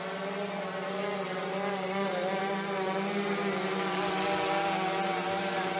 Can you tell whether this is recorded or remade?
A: recorded